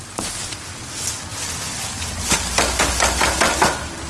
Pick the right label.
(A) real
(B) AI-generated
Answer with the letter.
A